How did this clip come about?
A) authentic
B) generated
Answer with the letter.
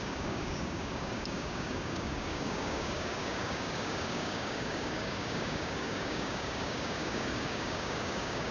B